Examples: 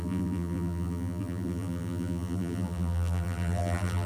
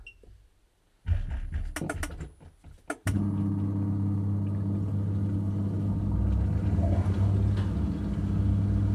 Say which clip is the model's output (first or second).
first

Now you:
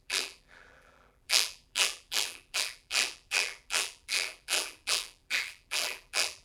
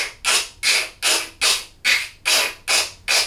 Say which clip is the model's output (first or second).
first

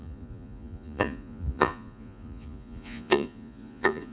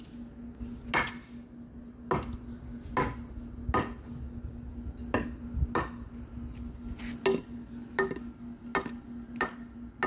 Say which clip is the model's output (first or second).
first